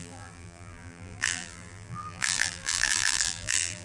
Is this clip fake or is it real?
fake